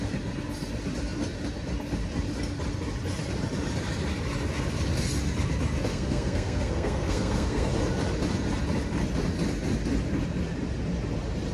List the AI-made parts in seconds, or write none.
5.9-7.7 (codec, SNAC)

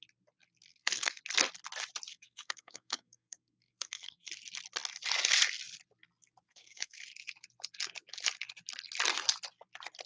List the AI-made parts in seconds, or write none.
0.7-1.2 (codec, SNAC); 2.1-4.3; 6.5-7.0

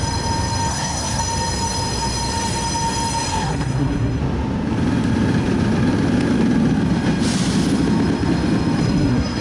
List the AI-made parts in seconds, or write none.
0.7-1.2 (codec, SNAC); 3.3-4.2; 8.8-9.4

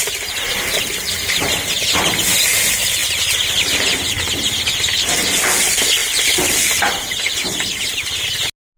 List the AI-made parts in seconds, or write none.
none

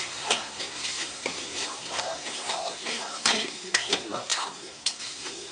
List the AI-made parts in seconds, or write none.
0.0-5.5 (codec, SNAC)

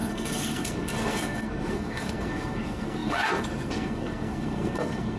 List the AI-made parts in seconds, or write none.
0.0-5.2 (codec, SNAC)

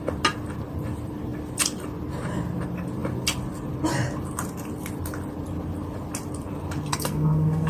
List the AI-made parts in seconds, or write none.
6.9-7.7 (codec, SNAC)

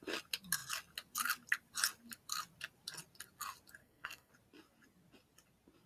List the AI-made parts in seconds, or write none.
3.8-4.3 (codec, SNAC)